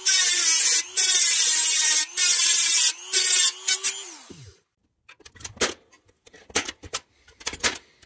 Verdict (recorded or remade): recorded